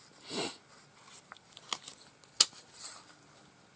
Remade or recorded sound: recorded